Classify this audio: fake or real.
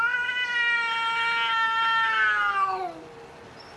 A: real